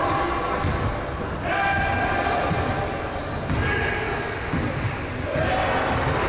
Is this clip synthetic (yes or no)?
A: no